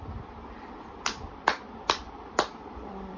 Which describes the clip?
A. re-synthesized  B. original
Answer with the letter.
A